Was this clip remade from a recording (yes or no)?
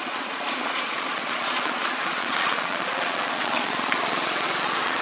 yes